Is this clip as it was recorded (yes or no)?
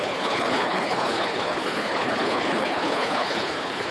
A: no